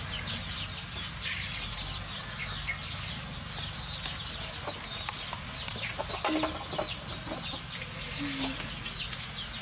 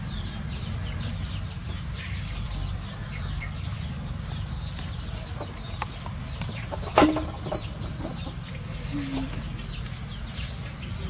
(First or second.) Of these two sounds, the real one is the first